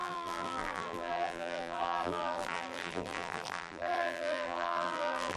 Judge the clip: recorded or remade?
remade